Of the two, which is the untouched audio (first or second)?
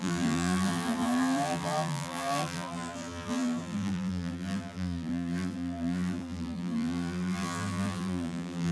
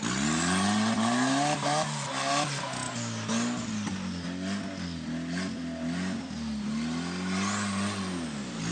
second